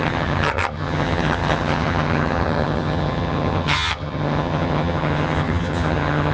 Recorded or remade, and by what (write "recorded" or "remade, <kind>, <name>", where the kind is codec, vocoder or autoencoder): remade, vocoder, HiFi-GAN